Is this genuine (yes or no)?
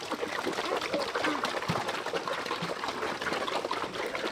yes